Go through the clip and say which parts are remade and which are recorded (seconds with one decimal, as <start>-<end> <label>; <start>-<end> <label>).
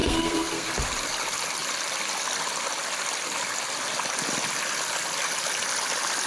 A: 0.0-0.7 remade; 0.7-6.3 recorded